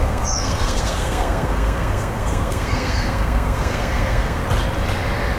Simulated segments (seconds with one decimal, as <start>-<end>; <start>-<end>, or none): 0.0-4.4